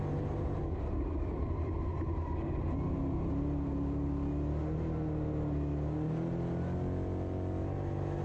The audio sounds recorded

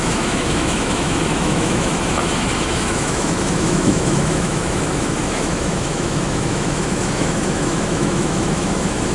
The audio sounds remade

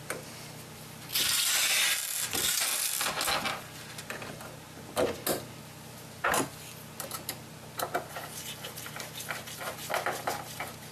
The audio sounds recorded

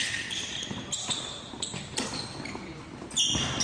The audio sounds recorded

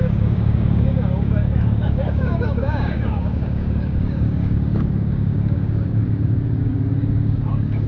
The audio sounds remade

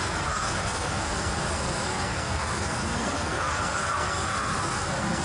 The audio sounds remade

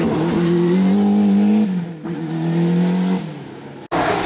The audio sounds recorded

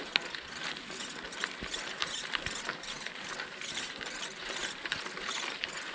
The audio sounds remade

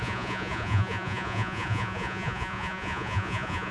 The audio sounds remade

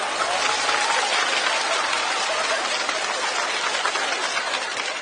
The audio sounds recorded